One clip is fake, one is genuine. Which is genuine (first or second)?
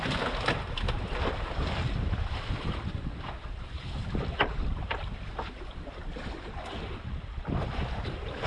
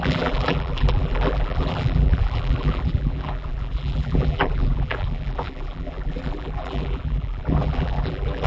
first